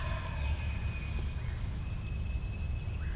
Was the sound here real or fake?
real